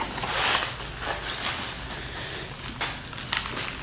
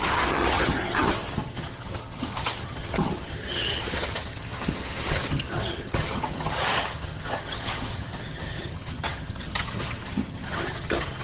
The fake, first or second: second